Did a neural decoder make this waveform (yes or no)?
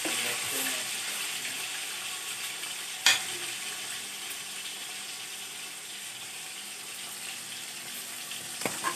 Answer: no